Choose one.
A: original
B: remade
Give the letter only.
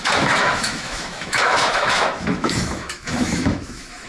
B